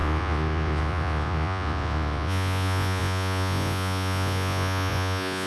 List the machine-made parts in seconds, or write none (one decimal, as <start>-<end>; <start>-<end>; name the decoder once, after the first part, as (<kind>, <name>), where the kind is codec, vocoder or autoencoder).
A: 0.0-5.5 (vocoder, Vocos)